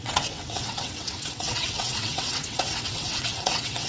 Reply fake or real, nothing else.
fake